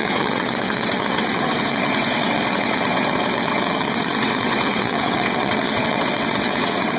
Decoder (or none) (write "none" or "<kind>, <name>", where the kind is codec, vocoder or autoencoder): vocoder, WaveNeXt